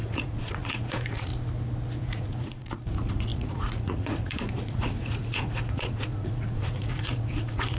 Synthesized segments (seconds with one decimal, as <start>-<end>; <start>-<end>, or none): 0.0-1.3; 2.0-7.8